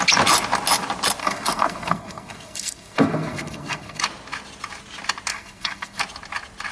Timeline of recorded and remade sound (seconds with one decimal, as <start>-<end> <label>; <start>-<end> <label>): 0.0-1.2 recorded; 1.2-4.0 remade; 4.0-5.3 recorded; 5.3-6.0 remade; 6.0-6.7 recorded